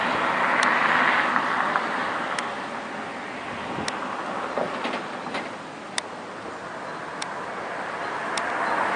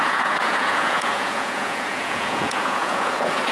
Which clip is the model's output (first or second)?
second